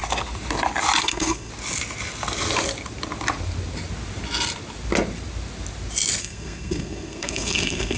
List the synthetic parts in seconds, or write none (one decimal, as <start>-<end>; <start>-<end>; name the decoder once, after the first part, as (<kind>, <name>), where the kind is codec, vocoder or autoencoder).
1.0-1.5 (codec, SNAC); 6.2-8.0